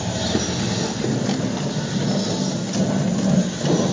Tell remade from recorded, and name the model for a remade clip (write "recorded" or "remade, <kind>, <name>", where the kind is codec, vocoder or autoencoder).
recorded